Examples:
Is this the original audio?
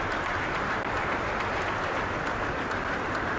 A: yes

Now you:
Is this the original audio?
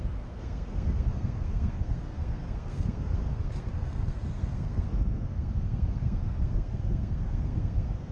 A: no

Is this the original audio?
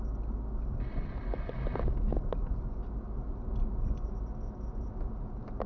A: yes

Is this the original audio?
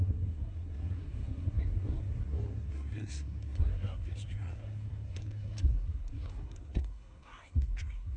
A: no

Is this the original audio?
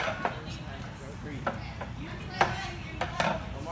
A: yes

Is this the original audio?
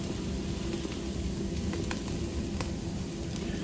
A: yes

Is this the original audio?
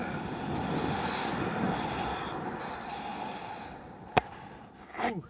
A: yes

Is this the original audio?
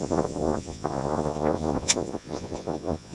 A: no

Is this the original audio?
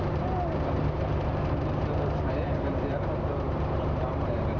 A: no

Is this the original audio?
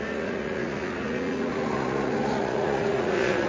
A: no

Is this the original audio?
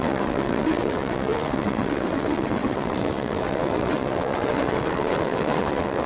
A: no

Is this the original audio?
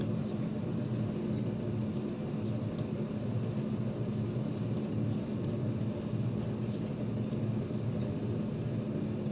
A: yes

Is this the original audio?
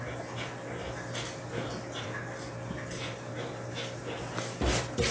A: yes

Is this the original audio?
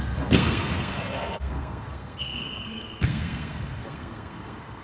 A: no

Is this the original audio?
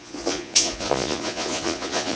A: no